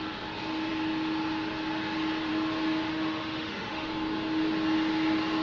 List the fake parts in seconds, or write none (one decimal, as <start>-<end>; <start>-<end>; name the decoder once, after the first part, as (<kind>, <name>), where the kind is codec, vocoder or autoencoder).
2.9-3.9 (autoencoder, DAC-VAE)